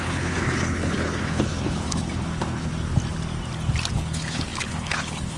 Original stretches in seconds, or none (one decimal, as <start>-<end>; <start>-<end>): 2.7-3.9